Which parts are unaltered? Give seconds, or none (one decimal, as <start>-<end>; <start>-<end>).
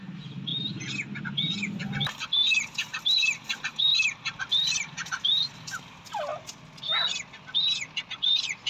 0.0-2.4; 5.4-8.7